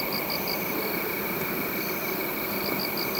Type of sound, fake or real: real